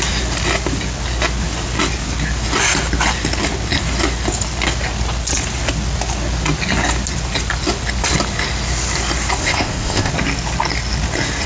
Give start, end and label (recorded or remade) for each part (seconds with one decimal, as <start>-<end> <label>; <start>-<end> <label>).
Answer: 0.0-9.4 recorded; 9.4-10.1 remade; 10.1-11.5 recorded